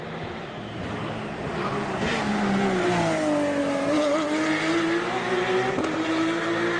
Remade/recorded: recorded